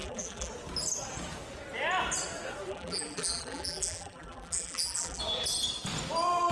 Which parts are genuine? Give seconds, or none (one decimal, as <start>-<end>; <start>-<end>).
0.5-2.7; 5.2-6.5